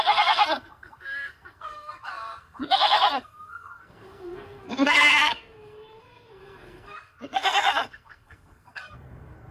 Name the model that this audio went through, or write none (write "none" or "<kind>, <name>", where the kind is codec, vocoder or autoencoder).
codec, SNAC